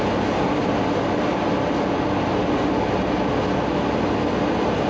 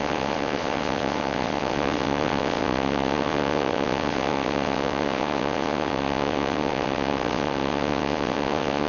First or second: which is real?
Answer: first